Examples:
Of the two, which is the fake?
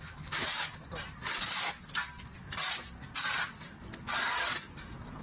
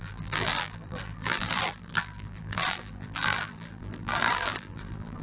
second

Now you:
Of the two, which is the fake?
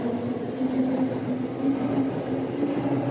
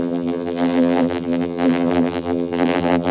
second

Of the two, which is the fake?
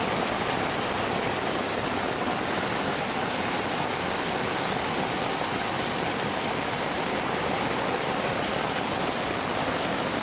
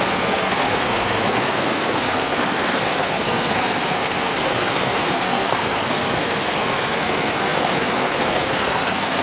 second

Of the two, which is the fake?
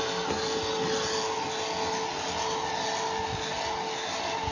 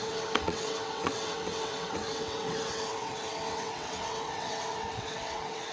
second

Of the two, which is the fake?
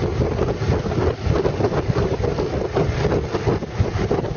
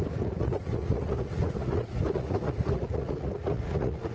second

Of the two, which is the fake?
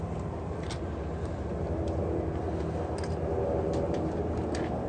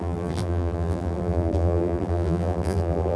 second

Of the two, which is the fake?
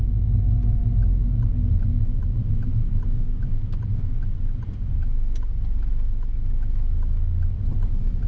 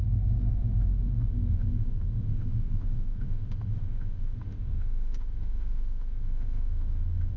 second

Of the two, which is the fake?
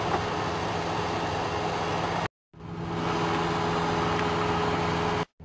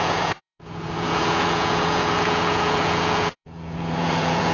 second